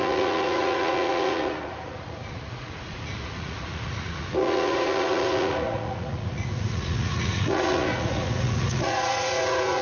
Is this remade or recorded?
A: remade